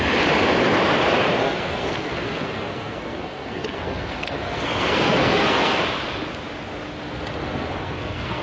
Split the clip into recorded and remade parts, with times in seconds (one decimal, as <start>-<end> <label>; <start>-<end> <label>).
0.0-1.4 recorded; 1.4-5.8 remade; 5.8-7.4 recorded; 7.4-8.4 remade